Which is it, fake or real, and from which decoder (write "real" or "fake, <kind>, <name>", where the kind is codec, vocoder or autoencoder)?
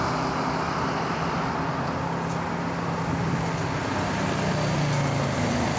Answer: real